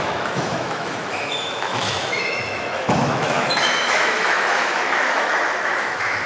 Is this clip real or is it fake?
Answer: fake